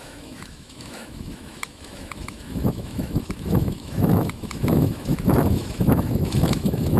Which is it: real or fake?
fake